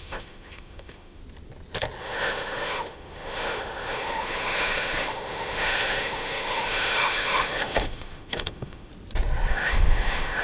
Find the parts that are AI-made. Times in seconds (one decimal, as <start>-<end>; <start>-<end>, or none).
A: 0.0-1.2; 2.0-8.9; 9.5-10.4